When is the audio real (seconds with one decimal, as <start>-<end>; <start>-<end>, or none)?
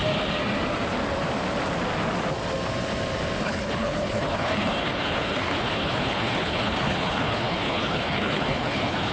0.0-3.4